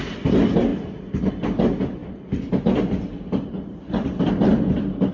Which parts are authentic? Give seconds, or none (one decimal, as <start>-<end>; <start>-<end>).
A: 0.0-0.7; 1.3-5.1